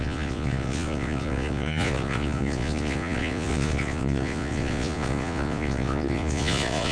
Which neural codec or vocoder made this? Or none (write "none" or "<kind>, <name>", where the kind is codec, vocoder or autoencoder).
vocoder, Vocos